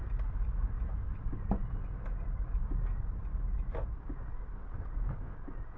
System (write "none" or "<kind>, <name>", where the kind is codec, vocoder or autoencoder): none